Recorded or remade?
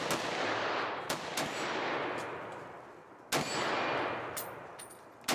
recorded